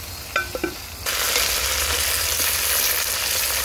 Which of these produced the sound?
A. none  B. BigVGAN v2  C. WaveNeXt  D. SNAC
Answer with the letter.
A